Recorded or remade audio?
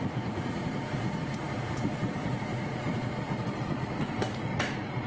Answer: remade